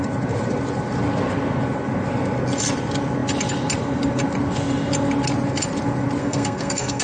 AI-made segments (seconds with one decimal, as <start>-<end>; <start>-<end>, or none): 6.2-7.0